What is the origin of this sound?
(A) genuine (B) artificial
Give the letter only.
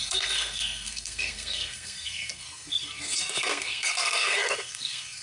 B